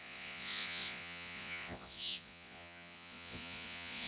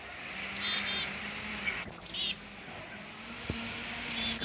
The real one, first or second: second